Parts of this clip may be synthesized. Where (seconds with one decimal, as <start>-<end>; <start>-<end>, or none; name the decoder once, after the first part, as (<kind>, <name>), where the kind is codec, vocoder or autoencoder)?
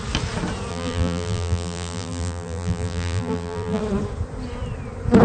0.7-3.8 (vocoder, BigVGAN v2)